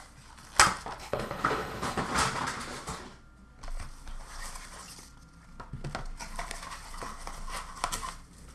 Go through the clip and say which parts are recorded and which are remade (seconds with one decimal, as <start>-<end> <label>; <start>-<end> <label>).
0.0-1.0 recorded; 1.0-2.0 remade; 2.0-8.5 recorded